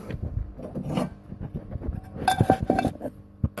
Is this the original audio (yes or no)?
yes